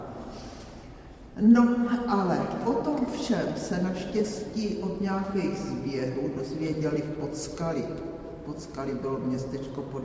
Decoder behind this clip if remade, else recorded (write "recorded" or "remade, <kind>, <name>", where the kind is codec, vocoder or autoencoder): remade, vocoder, BigVGAN v2